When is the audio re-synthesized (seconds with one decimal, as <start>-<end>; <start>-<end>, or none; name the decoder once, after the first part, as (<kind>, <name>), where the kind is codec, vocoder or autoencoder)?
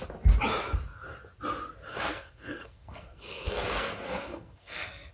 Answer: 1.9-5.1 (codec, SNAC)